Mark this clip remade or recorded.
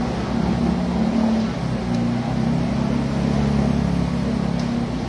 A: recorded